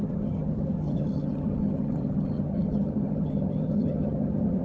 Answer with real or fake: fake